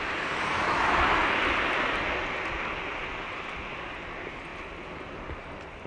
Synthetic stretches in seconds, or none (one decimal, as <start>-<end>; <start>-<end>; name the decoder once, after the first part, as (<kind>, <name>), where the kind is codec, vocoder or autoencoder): none